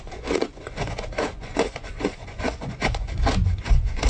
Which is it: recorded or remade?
remade